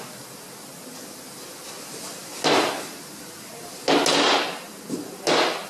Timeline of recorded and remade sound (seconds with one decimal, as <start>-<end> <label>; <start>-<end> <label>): 0.0-5.7 recorded